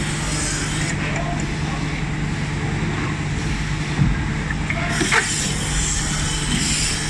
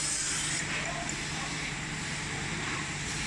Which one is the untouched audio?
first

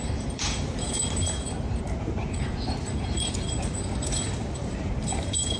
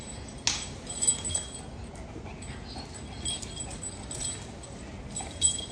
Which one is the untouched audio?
second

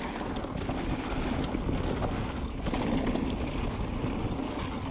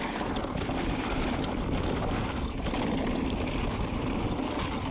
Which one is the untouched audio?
first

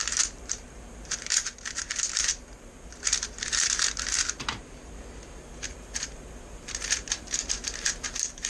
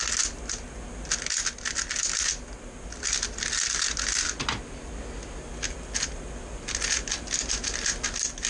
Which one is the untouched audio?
second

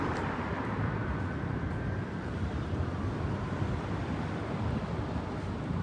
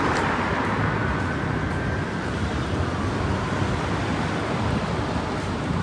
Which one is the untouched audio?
second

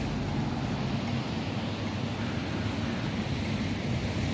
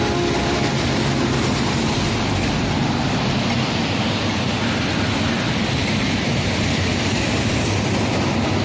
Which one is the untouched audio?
first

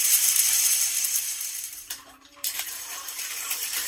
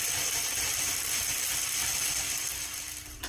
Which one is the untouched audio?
second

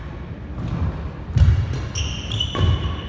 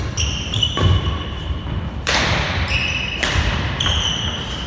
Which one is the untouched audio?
first